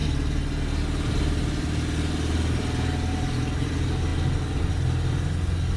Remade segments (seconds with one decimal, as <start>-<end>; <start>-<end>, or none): none